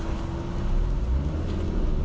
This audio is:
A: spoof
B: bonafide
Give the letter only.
B